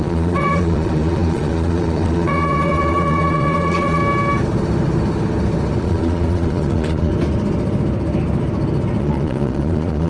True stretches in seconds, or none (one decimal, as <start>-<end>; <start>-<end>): 4.0-5.8; 7.1-9.0